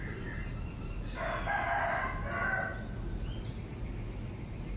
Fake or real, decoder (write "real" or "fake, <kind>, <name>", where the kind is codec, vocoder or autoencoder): real